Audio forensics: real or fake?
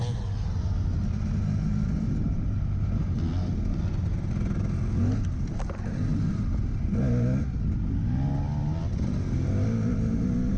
real